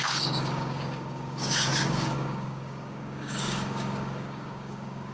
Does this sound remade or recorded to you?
remade